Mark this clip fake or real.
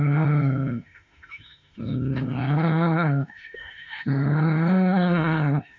fake